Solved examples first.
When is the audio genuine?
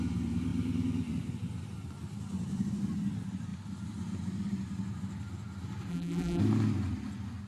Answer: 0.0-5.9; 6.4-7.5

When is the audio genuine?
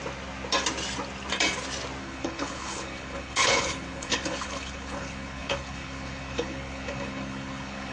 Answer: 0.0-2.0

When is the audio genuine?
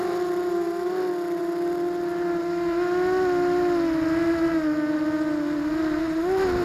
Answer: 0.0-6.6